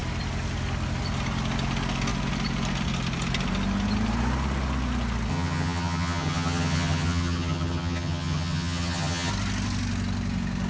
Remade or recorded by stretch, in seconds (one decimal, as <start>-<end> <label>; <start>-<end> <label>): 0.0-5.3 recorded; 5.3-9.3 remade; 9.3-10.7 recorded